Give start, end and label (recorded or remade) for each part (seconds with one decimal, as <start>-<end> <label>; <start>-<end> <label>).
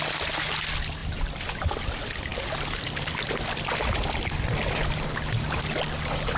0.0-6.4 recorded